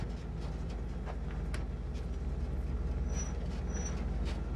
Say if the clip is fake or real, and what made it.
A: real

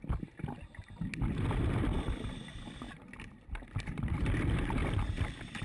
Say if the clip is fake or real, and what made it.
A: real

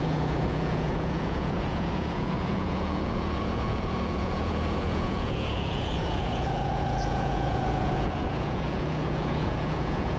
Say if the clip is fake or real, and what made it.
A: fake, vocoder, Vocos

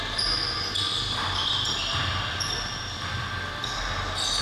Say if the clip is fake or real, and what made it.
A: real